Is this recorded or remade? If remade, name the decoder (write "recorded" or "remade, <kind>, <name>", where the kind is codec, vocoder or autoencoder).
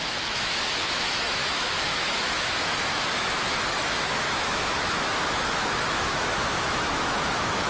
remade, autoencoder, DAC-VAE